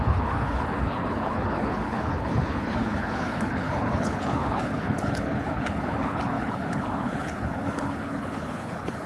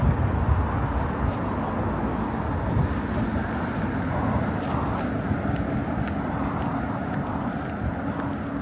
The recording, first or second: second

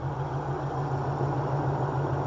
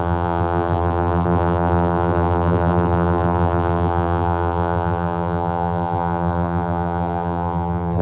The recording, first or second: first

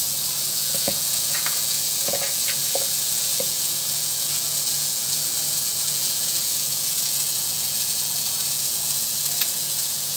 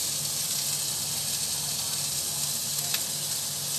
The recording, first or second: second